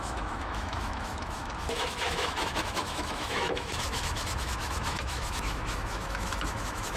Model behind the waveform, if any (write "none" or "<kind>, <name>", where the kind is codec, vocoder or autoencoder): autoencoder, DAC-VAE